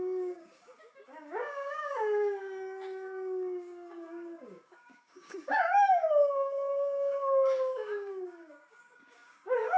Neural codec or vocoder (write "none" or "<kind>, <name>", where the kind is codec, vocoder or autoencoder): codec, DAC